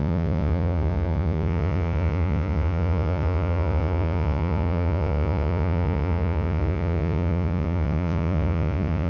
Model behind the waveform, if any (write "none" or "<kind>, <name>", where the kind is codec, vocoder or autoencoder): vocoder, Vocos